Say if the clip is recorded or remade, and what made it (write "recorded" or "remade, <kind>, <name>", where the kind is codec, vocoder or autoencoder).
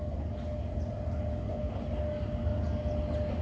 recorded